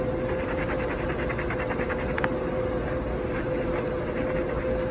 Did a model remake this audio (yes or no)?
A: no